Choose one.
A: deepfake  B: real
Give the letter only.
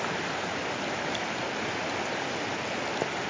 B